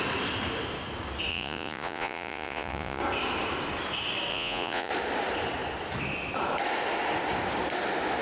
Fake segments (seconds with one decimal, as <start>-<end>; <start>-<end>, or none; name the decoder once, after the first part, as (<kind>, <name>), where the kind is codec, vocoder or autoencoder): 1.3-3.0 (vocoder, Vocos); 4.3-4.9